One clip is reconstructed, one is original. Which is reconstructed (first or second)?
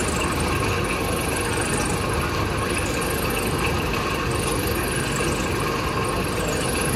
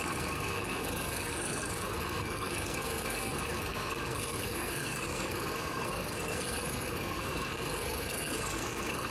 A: second